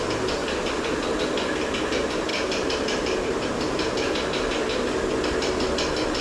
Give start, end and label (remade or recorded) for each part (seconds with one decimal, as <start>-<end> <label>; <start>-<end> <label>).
0.0-0.4 recorded; 0.4-1.2 remade; 1.2-6.2 recorded